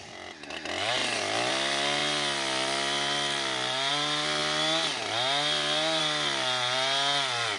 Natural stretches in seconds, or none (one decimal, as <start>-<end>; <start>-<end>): 0.0-7.6